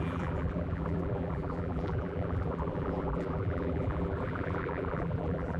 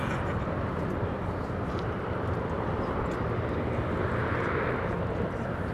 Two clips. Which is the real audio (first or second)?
second